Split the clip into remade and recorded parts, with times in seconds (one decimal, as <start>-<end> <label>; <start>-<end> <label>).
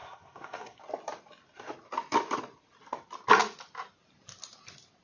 0.0-0.8 remade; 0.8-5.0 recorded